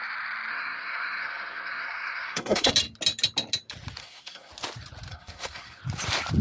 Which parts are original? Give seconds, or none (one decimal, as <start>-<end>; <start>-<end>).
0.0-0.5; 2.7-4.0; 4.5-5.1; 5.8-6.4